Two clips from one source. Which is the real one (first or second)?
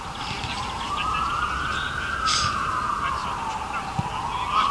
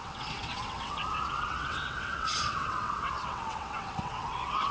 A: first